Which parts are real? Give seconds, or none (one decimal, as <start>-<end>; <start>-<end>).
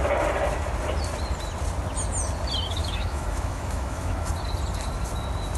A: 0.0-2.8; 4.3-5.6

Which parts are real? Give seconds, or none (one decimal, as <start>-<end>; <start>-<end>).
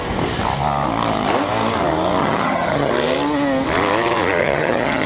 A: 0.0-2.2; 2.9-4.4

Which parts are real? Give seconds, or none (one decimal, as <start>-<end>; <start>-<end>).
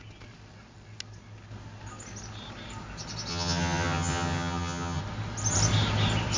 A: 0.0-3.3; 5.0-6.4